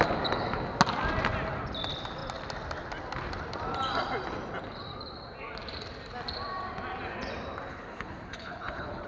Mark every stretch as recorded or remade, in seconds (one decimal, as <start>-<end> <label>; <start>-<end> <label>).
0.0-7.7 recorded; 7.7-9.1 remade